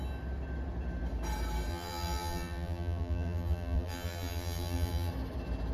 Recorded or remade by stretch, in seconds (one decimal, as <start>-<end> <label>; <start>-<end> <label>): 0.0-1.7 recorded; 1.7-5.1 remade; 5.1-5.7 recorded